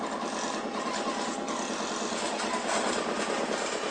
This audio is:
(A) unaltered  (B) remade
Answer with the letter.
A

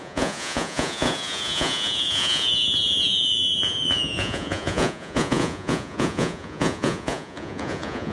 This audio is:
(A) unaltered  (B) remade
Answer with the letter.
B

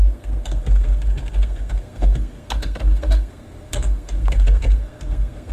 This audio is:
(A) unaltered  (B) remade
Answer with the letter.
B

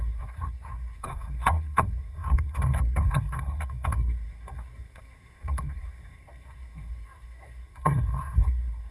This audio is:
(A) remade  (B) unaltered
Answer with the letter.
A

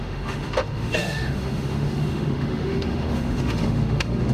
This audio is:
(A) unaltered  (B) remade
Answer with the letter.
B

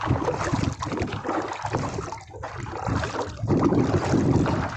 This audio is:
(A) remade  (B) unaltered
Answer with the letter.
B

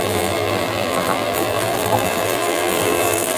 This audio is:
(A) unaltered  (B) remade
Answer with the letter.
B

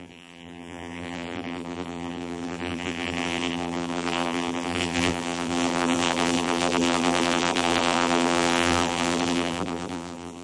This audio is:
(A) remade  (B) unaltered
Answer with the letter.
A